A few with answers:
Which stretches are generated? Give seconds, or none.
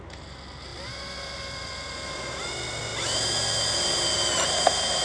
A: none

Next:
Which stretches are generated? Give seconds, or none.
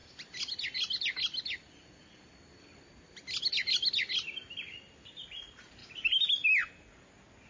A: none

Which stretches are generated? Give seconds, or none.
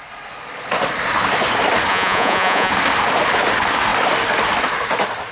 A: 1.9-2.7 (vocoder, Vocos)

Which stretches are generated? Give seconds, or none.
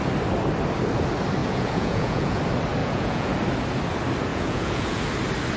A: 1.4-2.4 (vocoder, Vocos); 2.8-3.3; 4.3-5.0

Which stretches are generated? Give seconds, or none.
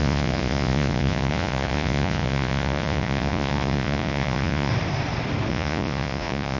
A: 0.0-4.7 (vocoder, Vocos); 5.5-6.6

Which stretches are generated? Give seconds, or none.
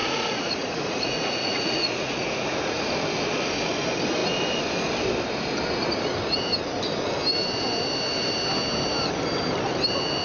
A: 0.0-2.9 (vocoder, Vocos)